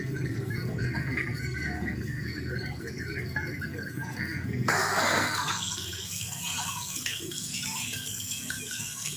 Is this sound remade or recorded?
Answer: remade